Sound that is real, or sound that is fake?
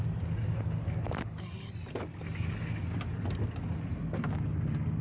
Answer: real